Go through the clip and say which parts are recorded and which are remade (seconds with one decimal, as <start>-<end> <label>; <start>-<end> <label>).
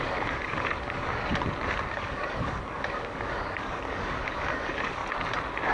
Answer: 0.0-1.3 remade; 1.3-1.9 recorded; 1.9-5.0 remade; 5.0-5.7 recorded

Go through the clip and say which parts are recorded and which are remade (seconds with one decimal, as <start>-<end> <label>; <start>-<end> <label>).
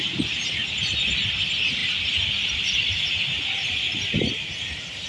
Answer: 0.0-5.1 recorded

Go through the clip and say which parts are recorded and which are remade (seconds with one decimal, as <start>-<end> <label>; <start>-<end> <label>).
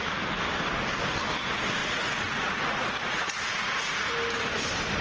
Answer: 0.0-1.8 recorded; 1.8-4.1 remade; 4.1-5.0 recorded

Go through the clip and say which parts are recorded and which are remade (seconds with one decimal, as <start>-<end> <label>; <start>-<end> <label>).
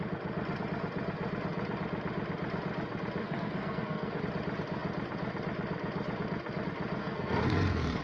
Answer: 0.0-3.2 recorded; 3.2-4.2 remade; 4.2-7.0 recorded; 7.0-8.0 remade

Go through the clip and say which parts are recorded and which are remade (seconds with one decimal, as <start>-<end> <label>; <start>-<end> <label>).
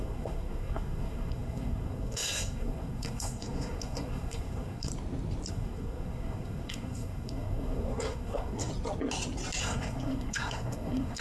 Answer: 0.0-4.9 remade; 4.9-5.5 recorded; 5.5-8.7 remade; 8.7-9.6 recorded; 9.6-11.2 remade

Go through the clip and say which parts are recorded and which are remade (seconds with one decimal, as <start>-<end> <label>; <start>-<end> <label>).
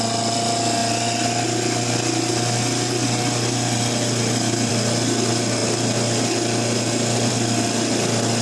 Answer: 0.0-8.4 recorded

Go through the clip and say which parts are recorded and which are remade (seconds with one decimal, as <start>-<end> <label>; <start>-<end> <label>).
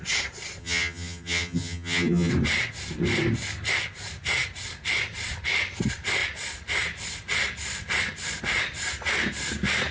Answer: 0.0-0.6 recorded; 0.6-2.3 remade; 2.3-9.9 recorded